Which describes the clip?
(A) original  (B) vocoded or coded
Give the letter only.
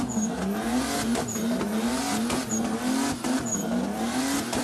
A